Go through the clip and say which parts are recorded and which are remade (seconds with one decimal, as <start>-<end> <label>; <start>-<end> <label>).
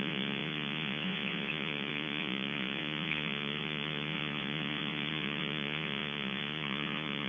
0.0-7.3 remade